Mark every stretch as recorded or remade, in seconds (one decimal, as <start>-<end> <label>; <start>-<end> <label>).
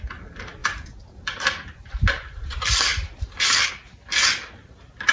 0.0-0.6 recorded; 0.6-3.7 remade; 3.7-5.1 recorded